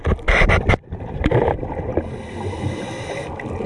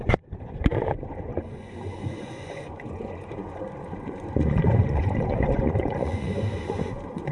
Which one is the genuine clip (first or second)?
first